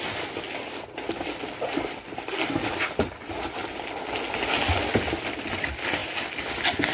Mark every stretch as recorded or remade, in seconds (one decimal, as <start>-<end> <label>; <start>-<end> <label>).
0.0-6.9 recorded